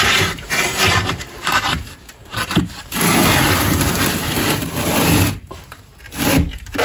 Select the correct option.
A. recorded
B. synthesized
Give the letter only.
B